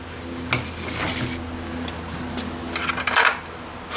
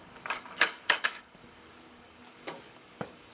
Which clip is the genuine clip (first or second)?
first